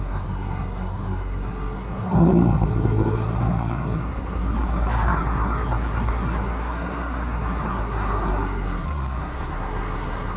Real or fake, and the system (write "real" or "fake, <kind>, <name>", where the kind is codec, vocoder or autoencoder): fake, codec, SNAC